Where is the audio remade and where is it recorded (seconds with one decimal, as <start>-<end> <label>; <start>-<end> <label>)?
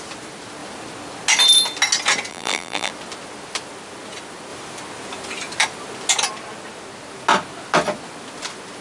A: 0.0-2.3 recorded; 2.3-2.9 remade; 2.9-8.8 recorded